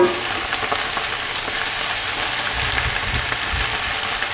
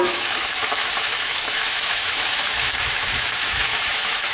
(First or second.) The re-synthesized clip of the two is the second